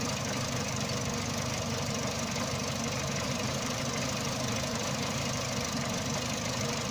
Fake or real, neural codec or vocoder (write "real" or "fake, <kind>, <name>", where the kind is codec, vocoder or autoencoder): real